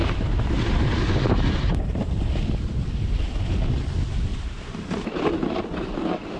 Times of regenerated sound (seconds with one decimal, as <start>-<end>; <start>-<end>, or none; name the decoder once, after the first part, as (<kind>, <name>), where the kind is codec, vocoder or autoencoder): 0.0-3.2 (vocoder, BigVGAN v2); 4.3-5.2